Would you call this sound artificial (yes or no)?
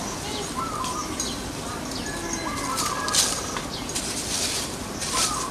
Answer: no